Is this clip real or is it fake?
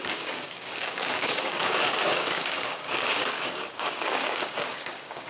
fake